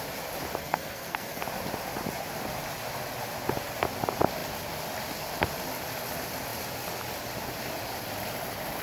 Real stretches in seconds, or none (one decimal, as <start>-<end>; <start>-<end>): 0.0-0.6; 1.4-8.8